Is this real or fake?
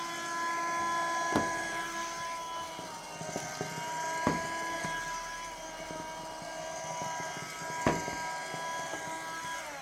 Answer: real